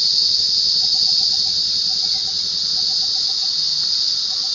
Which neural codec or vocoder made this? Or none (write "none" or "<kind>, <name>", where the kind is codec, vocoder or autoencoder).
none